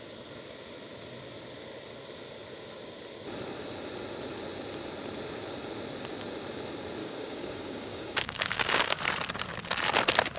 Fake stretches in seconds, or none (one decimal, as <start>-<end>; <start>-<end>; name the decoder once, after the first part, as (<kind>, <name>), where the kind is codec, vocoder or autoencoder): 7.0-9.0 (codec, DAC)